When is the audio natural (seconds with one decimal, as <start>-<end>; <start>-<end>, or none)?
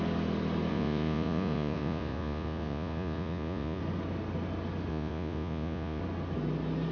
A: 0.0-0.7; 3.8-4.9; 6.0-6.9